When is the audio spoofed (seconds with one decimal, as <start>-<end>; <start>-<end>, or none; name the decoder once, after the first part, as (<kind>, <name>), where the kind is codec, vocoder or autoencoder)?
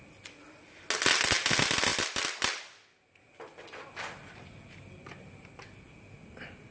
none